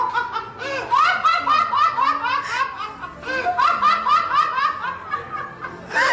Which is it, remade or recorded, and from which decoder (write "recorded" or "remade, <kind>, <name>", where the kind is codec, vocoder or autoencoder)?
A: recorded